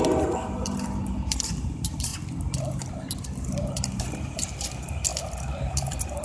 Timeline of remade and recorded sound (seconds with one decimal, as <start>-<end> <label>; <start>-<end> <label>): 0.0-2.1 remade; 2.1-3.6 recorded; 3.6-6.2 remade

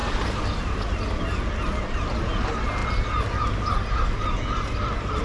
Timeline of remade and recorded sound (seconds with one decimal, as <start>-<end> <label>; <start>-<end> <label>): 0.0-5.2 recorded

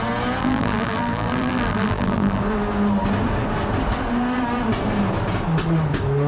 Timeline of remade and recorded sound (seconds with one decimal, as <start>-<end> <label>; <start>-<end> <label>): 0.0-0.4 recorded; 0.4-2.4 remade; 2.4-6.3 recorded

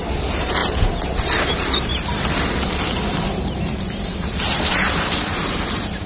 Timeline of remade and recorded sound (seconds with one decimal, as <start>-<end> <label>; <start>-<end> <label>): 0.0-1.9 remade; 1.9-3.1 recorded; 3.1-6.1 remade